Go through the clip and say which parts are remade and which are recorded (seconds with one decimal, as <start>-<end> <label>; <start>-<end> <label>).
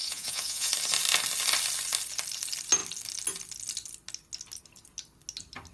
0.0-0.7 remade; 0.7-5.7 recorded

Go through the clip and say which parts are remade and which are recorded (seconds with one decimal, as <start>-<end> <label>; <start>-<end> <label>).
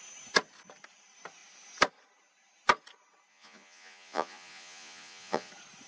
0.0-3.3 recorded; 3.3-5.5 remade; 5.5-5.9 recorded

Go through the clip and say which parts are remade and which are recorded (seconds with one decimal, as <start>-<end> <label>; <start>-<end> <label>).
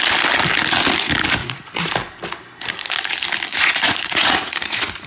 0.0-1.4 recorded; 1.4-1.9 remade; 1.9-3.5 recorded; 3.5-5.1 remade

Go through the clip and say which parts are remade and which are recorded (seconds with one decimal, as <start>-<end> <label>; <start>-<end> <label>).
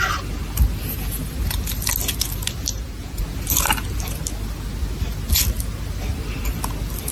0.0-2.7 recorded; 2.7-3.2 remade; 3.2-7.1 recorded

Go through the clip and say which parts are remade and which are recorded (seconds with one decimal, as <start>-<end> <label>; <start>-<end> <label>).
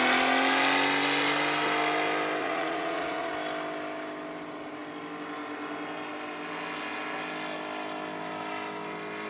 0.0-2.4 recorded; 2.4-3.3 remade; 3.3-9.3 recorded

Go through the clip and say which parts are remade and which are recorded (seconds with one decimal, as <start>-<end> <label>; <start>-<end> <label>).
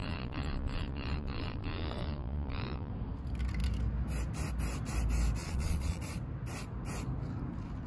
0.0-2.9 remade; 2.9-5.4 recorded; 5.4-6.0 remade; 6.0-7.9 recorded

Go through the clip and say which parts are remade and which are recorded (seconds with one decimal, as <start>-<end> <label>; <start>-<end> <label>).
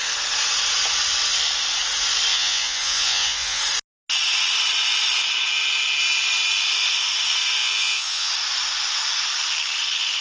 0.0-2.3 recorded; 2.3-3.6 remade; 3.6-7.6 recorded; 7.6-8.3 remade; 8.3-10.2 recorded